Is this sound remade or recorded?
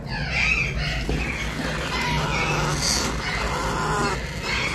recorded